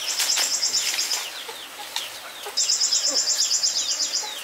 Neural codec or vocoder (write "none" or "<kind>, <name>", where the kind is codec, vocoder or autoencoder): none